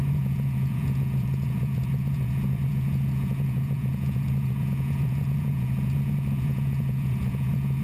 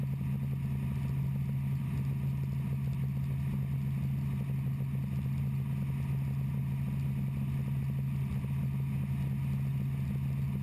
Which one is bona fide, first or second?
second